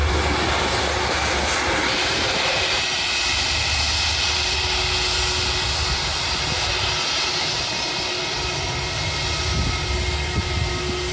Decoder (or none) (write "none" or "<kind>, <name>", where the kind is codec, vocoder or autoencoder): none